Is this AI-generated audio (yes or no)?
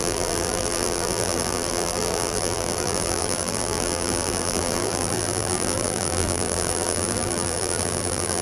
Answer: yes